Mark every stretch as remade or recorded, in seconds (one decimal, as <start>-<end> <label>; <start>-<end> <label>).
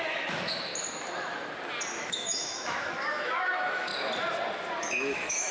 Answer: 0.0-0.7 remade; 0.7-2.0 recorded; 2.0-3.9 remade; 3.9-4.8 recorded; 4.8-5.5 remade